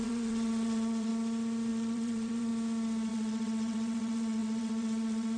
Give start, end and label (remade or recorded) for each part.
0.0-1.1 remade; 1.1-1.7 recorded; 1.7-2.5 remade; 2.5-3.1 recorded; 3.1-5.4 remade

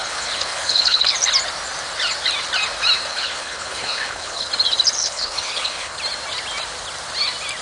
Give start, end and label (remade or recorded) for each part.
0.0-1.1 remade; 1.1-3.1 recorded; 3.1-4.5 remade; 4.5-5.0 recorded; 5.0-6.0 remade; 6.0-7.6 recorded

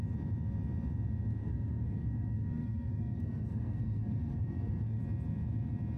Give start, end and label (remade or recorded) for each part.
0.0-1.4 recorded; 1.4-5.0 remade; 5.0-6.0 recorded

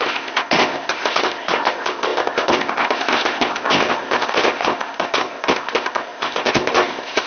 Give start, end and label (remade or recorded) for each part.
0.0-7.3 remade

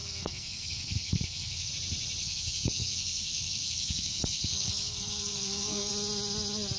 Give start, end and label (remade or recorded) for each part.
0.0-1.7 remade; 1.7-2.2 recorded; 2.2-5.9 remade; 5.9-6.8 recorded

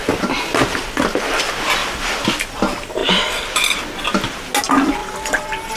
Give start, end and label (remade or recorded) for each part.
0.0-1.8 recorded; 1.8-2.4 remade; 2.4-3.0 recorded; 3.0-3.8 remade; 3.8-5.0 recorded; 5.0-5.8 remade

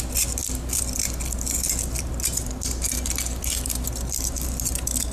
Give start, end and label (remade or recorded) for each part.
0.0-5.1 recorded